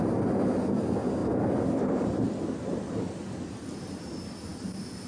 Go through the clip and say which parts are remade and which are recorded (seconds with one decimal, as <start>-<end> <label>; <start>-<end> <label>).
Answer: 0.0-1.2 recorded; 1.2-3.6 remade; 3.6-4.5 recorded; 4.5-5.1 remade